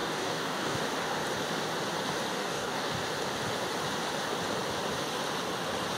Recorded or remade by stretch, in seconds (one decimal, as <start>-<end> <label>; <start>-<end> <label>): 0.0-0.8 remade; 0.8-2.3 recorded; 2.3-2.9 remade; 2.9-6.0 recorded